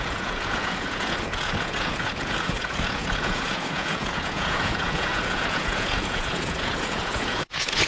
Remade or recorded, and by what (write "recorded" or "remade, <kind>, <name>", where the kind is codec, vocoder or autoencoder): remade, vocoder, Vocos